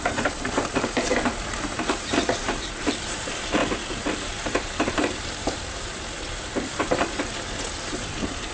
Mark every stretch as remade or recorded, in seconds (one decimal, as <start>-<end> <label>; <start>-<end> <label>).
0.0-3.6 remade; 3.6-4.1 recorded; 4.1-7.3 remade; 7.3-7.9 recorded; 7.9-8.5 remade